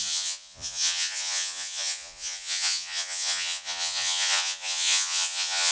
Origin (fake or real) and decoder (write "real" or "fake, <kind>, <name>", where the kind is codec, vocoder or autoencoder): fake, vocoder, Vocos